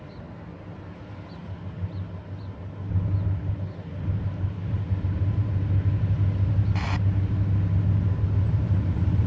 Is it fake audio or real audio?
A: real